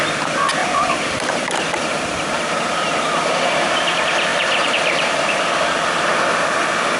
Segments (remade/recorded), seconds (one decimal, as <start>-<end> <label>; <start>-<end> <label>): 0.0-0.6 recorded; 0.6-3.3 remade; 3.3-4.3 recorded; 4.3-5.4 remade; 5.4-7.0 recorded